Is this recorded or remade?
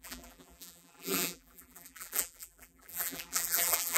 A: remade